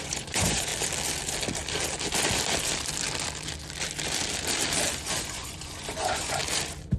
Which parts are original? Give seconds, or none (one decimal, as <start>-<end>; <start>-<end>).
0.7-4.9; 6.4-7.0